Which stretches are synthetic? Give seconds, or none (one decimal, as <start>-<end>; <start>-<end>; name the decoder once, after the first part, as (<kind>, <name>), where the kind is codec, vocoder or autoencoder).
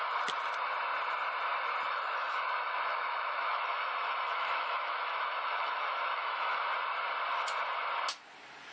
1.9-6.6 (autoencoder, DAC-VAE)